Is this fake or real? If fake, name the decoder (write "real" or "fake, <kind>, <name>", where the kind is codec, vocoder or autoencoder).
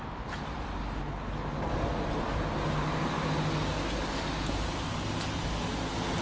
real